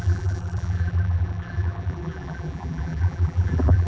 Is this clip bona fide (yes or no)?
no